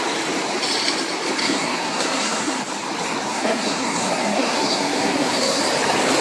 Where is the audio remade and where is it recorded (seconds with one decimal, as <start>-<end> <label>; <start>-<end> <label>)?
0.0-1.4 recorded; 1.4-2.6 remade; 2.6-3.3 recorded; 3.3-5.6 remade; 5.6-6.2 recorded